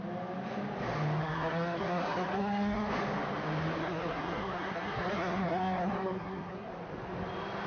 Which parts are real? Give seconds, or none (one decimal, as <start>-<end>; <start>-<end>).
0.0-1.2; 2.9-3.8; 6.7-7.7